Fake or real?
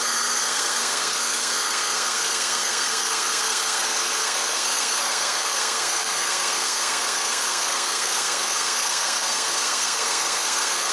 fake